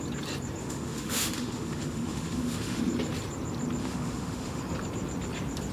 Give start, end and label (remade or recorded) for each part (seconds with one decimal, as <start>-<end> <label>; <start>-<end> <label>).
0.0-0.6 recorded; 0.6-2.8 remade; 2.8-3.8 recorded; 3.8-4.6 remade; 4.6-5.7 recorded